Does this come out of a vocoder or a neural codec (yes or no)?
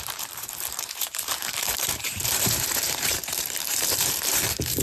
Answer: yes